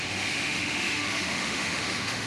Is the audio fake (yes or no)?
yes